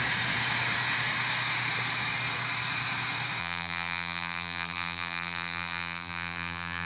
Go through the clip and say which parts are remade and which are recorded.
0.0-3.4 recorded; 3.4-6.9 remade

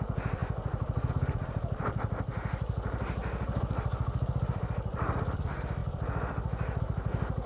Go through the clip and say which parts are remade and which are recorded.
0.0-2.3 remade; 2.3-3.6 recorded; 3.6-7.5 remade

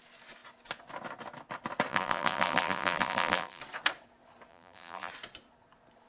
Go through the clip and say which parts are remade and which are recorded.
0.0-1.9 recorded; 1.9-3.6 remade; 3.6-4.5 recorded; 4.5-5.1 remade; 5.1-6.1 recorded